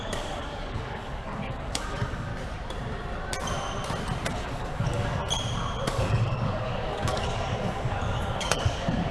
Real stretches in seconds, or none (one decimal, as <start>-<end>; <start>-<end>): 2.3-4.3; 5.2-5.9